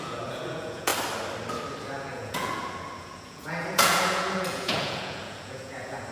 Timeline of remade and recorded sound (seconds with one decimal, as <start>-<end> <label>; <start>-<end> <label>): 0.0-0.9 remade; 0.9-1.8 recorded; 1.8-6.1 remade